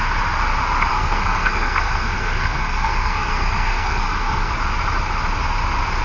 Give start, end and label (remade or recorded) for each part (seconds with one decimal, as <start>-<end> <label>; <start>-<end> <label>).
0.0-0.9 recorded; 0.9-4.5 remade; 4.5-6.0 recorded